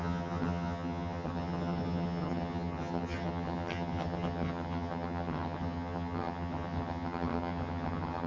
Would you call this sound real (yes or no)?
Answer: no